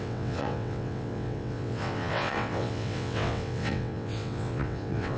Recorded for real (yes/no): no